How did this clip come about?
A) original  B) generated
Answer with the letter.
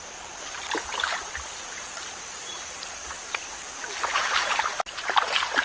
B